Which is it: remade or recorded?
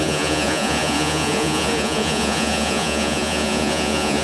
remade